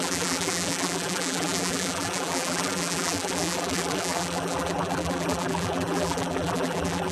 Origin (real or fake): fake